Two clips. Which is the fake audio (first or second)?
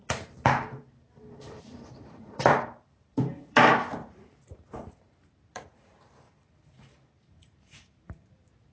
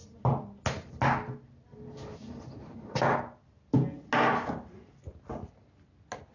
first